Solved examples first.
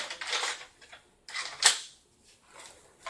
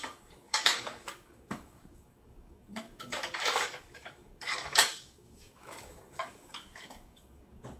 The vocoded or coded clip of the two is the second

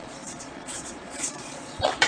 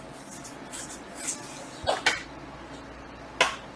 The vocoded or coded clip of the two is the first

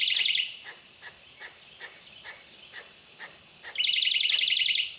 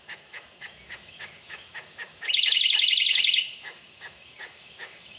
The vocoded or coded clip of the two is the second